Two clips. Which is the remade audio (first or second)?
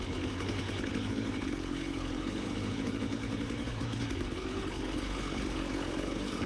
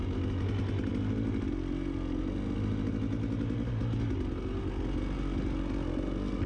first